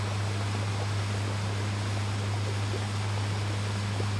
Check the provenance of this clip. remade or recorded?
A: recorded